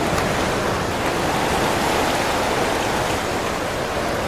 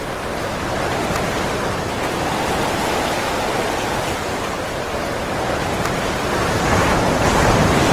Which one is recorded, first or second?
first